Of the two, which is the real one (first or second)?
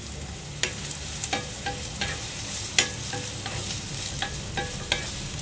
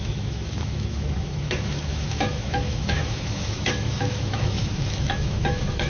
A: first